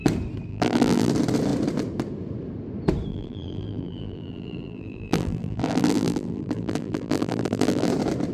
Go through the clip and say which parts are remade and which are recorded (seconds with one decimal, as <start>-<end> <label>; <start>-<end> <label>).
0.0-0.5 recorded; 0.5-1.1 remade; 1.1-3.1 recorded; 3.1-7.9 remade; 7.9-8.3 recorded